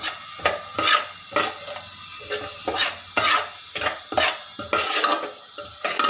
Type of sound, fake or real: real